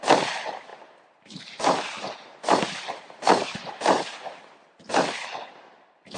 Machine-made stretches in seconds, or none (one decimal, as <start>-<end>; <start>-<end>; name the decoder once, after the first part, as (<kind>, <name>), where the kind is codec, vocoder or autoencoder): 0.7-4.4 (vocoder, BigVGAN v2)